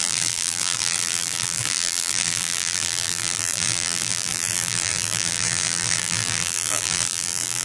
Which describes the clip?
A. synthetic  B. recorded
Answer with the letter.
A